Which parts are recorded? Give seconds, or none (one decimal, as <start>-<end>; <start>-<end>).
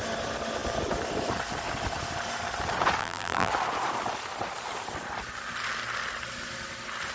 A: 0.0-3.0; 3.5-7.1